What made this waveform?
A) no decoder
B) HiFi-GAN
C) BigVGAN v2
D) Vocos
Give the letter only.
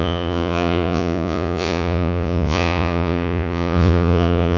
D